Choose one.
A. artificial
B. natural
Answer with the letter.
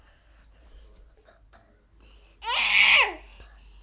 B